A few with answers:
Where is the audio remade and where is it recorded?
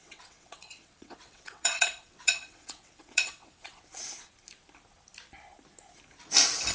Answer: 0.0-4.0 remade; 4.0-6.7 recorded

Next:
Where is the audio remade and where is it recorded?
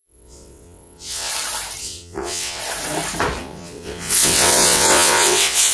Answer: 0.0-1.3 remade; 1.3-1.8 recorded; 1.8-2.6 remade; 2.6-3.4 recorded; 3.4-5.7 remade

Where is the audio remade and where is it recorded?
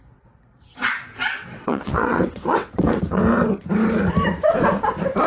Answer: 0.0-1.4 recorded; 1.4-3.2 remade; 3.2-5.3 recorded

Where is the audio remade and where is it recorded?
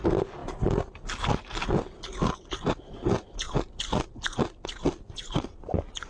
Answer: 0.0-6.1 recorded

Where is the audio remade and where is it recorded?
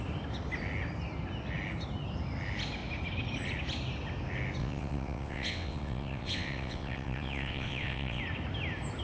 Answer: 0.0-4.6 recorded; 4.6-8.2 remade; 8.2-9.0 recorded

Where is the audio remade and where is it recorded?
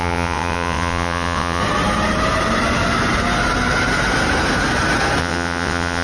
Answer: 0.0-1.6 remade; 1.6-5.2 recorded; 5.2-6.0 remade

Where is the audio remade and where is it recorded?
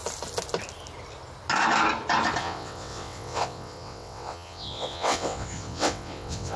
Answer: 0.0-2.4 recorded; 2.4-6.6 remade